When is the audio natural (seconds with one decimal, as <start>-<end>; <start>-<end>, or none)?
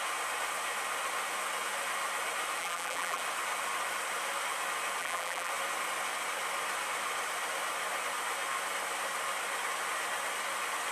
0.0-2.6; 3.2-5.0; 5.5-10.9